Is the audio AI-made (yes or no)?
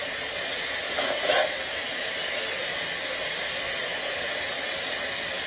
no